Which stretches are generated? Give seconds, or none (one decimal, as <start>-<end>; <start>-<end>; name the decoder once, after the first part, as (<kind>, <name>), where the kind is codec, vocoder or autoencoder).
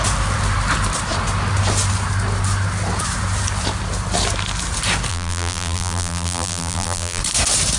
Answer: 5.1-7.2 (vocoder, BigVGAN v2)